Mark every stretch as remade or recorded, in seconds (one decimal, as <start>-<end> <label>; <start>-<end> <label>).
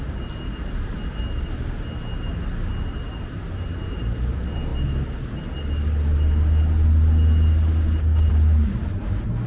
0.0-9.5 recorded